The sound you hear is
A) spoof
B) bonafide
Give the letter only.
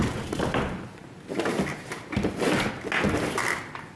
B